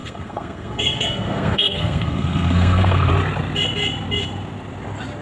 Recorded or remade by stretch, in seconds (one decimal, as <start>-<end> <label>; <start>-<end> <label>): 0.0-3.1 remade; 3.1-5.2 recorded